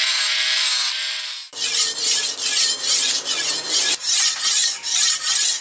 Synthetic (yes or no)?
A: no